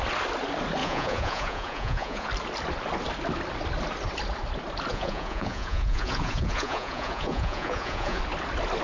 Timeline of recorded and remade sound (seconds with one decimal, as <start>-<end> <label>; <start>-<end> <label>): 0.0-0.8 recorded; 0.8-2.3 remade; 2.3-4.9 recorded; 4.9-8.2 remade; 8.2-8.8 recorded